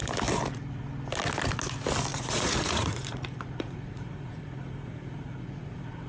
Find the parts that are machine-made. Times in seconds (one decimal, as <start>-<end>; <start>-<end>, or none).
2.1-6.1

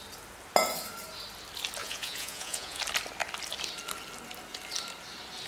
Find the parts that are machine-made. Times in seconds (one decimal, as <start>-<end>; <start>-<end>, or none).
1.8-2.8

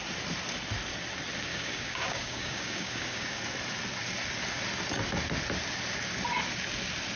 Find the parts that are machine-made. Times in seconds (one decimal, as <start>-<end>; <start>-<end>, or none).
1.5-3.4

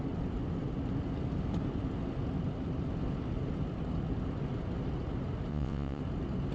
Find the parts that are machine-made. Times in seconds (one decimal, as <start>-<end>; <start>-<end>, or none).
5.5-6.0

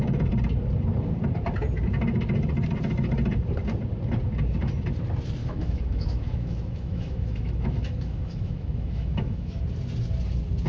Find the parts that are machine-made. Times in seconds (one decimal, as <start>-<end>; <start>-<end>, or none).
5.4-9.6

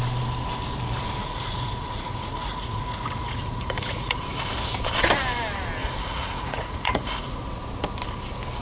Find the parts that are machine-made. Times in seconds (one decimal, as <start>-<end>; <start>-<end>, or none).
1.2-4.2; 5.8-7.4

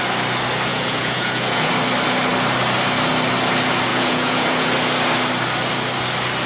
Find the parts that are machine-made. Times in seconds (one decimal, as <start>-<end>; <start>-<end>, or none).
0.7-1.7; 3.9-4.7

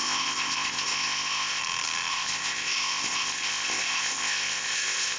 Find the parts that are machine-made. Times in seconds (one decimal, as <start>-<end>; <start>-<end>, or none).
0.0-1.6; 2.1-5.2